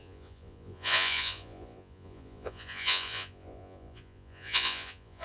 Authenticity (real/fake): fake